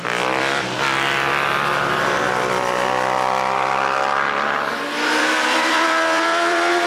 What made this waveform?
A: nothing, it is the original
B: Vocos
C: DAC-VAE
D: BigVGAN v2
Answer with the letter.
D